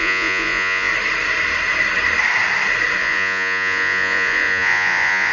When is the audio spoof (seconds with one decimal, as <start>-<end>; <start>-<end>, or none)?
0.0-0.9; 3.0-5.3